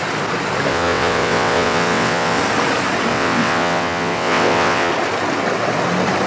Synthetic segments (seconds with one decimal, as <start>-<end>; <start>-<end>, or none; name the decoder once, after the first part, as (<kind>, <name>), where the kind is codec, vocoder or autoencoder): 0.7-2.4 (vocoder, WaveNeXt); 3.1-4.9